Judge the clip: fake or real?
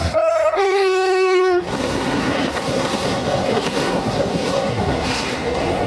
fake